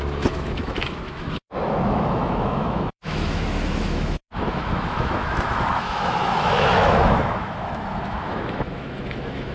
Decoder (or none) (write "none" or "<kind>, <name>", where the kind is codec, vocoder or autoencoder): autoencoder, DAC-VAE